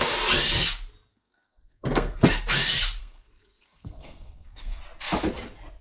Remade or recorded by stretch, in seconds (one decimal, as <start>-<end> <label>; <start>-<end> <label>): 0.0-1.1 recorded; 1.1-2.2 remade; 2.2-3.0 recorded; 3.0-4.8 remade; 4.8-5.8 recorded